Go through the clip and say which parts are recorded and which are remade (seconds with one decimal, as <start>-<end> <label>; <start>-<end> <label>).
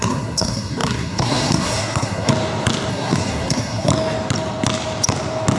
0.0-2.3 remade; 2.3-2.9 recorded; 2.9-3.9 remade; 3.9-5.6 recorded